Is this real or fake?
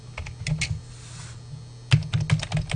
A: real